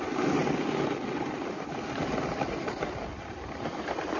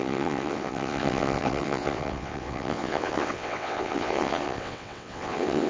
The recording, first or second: first